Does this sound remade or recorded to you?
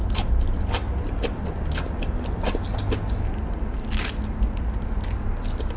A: recorded